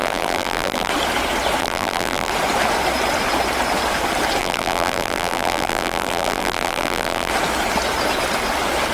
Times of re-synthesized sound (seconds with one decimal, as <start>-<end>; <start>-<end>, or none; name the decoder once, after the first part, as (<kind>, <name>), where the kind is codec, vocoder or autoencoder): 0.0-0.9 (vocoder, BigVGAN v2); 1.6-2.3; 4.4-7.3